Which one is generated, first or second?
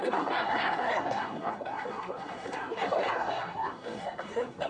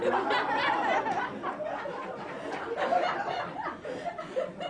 first